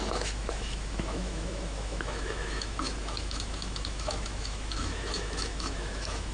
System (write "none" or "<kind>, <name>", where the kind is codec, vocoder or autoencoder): autoencoder, DAC-VAE